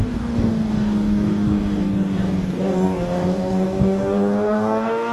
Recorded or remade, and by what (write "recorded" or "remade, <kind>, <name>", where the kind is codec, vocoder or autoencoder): remade, codec, DAC